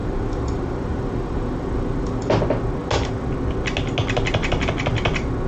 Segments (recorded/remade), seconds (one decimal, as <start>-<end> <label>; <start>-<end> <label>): 0.0-2.4 remade; 2.4-5.5 recorded